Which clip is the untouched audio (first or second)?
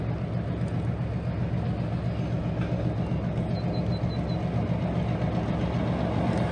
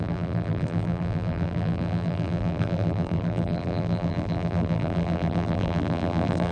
first